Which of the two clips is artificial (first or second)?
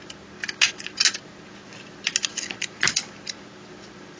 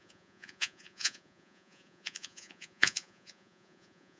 second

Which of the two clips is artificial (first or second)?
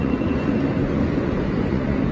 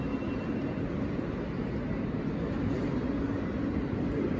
first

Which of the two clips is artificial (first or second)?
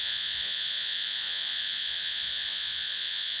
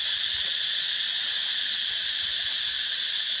first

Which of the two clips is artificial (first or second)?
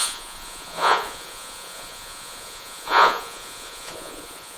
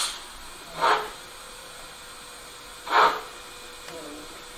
first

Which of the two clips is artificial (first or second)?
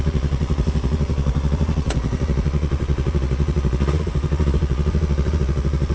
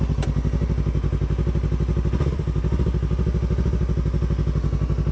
first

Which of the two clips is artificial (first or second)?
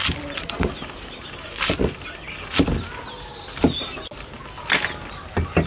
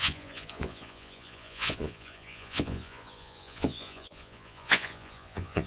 second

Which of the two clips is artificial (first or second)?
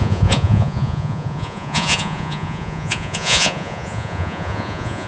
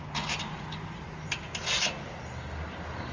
first